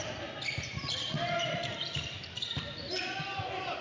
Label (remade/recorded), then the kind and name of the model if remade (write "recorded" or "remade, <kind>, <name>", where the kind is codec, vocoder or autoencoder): remade, vocoder, BigVGAN v2